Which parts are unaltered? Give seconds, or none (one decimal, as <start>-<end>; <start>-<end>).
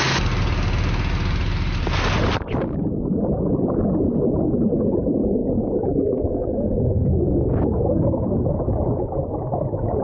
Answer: 0.0-5.4; 8.7-10.0